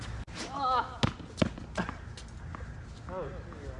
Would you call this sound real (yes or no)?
yes